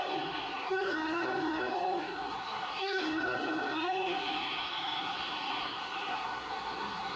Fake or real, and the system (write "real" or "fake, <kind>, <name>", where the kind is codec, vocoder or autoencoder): fake, codec, SNAC